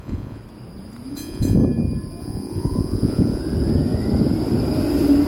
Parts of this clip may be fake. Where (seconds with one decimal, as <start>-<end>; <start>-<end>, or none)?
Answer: 0.0-0.4; 1.1-1.6; 2.2-3.4

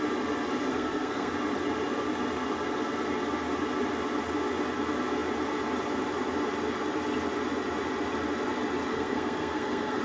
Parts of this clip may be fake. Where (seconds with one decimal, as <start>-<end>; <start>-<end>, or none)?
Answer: 0.7-1.3; 8.9-10.0

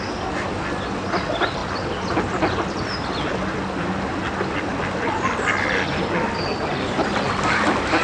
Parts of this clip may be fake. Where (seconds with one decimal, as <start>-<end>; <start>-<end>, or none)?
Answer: none

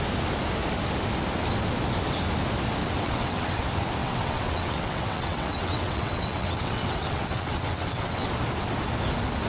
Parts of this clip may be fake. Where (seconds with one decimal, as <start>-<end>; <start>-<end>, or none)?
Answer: 2.8-3.6; 4.0-8.3

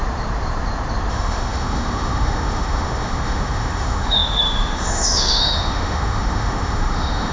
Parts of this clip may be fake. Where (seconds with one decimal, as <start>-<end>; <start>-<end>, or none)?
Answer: 1.1-7.3